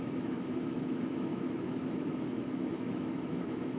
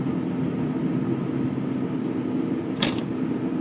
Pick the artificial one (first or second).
first